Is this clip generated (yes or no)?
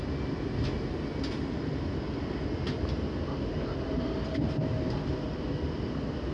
no